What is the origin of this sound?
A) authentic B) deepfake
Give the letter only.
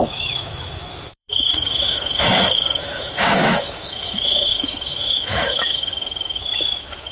B